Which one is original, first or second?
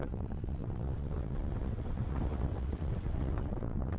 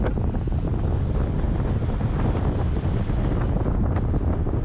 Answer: second